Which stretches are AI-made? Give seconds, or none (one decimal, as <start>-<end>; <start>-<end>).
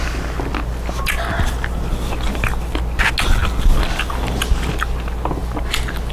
none